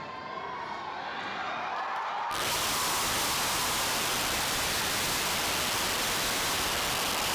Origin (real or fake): real